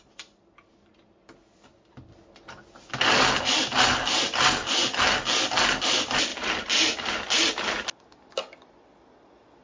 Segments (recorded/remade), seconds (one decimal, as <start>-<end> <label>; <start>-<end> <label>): 0.0-9.6 recorded